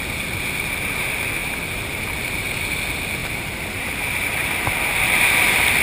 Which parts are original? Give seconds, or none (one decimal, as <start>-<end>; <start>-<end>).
0.0-3.2; 3.9-5.8